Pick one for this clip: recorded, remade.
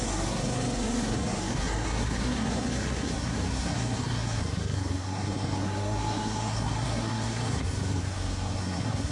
remade